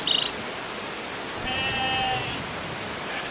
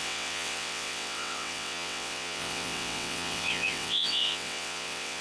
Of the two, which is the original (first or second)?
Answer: first